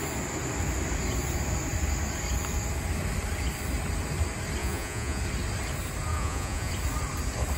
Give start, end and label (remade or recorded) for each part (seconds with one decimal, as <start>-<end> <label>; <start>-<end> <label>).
0.0-4.6 recorded; 4.6-5.2 remade; 5.2-6.1 recorded; 6.1-6.7 remade; 6.7-7.6 recorded